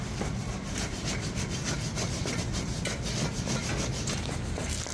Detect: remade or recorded recorded